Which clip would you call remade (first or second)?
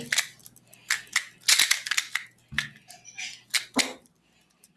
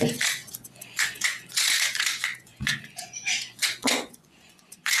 second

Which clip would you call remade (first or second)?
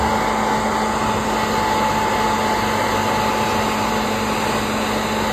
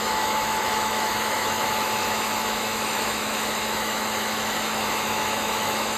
second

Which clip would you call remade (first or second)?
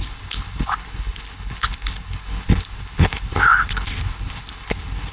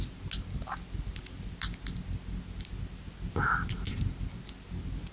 first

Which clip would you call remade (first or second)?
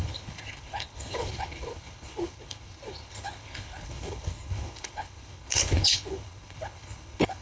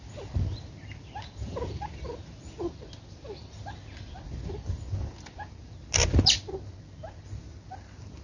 first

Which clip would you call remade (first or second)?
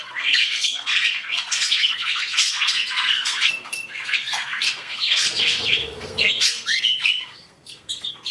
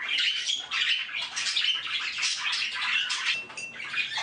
first